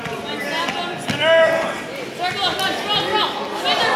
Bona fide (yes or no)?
yes